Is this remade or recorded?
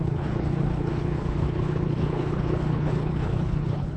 remade